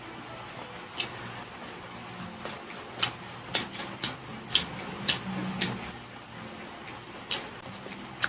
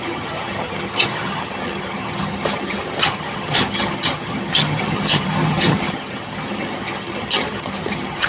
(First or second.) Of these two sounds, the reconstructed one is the second